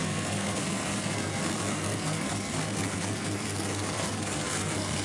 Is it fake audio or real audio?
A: fake